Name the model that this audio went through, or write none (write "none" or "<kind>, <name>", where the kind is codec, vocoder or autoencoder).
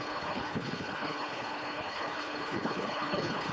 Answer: codec, HILCodec